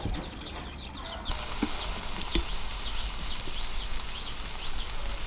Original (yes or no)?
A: yes